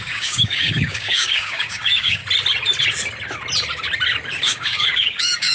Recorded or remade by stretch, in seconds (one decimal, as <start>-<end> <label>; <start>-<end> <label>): 0.0-2.2 remade; 2.2-4.4 recorded; 4.4-5.5 remade